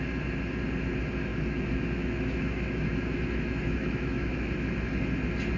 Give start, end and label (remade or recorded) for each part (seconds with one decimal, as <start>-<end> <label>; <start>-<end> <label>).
0.0-1.3 recorded; 1.3-4.7 remade; 4.7-5.6 recorded